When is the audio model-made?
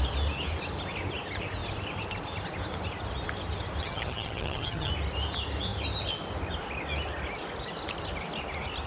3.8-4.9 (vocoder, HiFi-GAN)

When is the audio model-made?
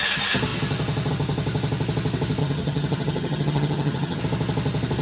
2.4-4.2 (vocoder, HiFi-GAN)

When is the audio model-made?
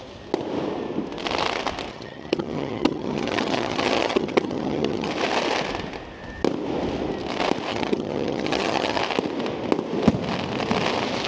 1.9-5.1 (vocoder, HiFi-GAN); 7.7-9.0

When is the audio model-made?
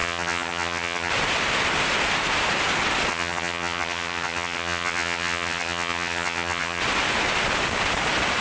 0.0-1.1 (vocoder, HiFi-GAN); 3.1-6.8